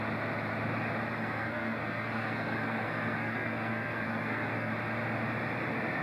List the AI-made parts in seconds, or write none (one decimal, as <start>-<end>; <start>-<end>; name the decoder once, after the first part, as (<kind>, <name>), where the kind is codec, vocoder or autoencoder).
1.2-4.7 (codec, SNAC)